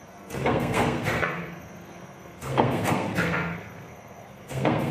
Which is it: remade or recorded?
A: remade